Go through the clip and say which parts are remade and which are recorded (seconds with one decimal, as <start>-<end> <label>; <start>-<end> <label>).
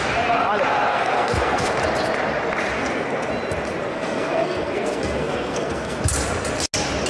0.0-0.9 recorded; 0.9-1.8 remade; 1.8-2.8 recorded; 2.8-3.3 remade; 3.3-3.9 recorded; 3.9-6.0 remade; 6.0-7.1 recorded